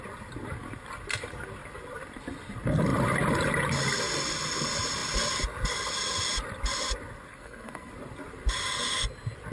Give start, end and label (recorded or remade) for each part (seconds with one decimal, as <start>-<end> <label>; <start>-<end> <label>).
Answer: 0.0-7.3 recorded; 7.3-7.9 remade; 7.9-9.5 recorded